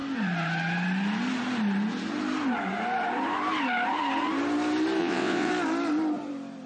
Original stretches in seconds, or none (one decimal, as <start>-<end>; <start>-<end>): 0.0-5.0; 5.5-6.7